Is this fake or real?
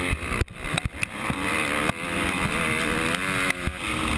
real